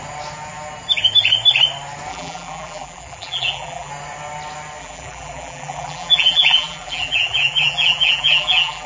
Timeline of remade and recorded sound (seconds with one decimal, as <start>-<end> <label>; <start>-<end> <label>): 0.0-2.1 recorded; 2.1-3.9 remade; 3.9-4.8 recorded; 4.8-8.9 remade